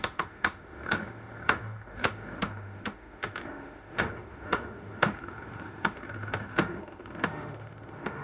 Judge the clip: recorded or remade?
remade